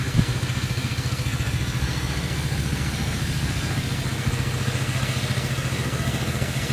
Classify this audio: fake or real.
fake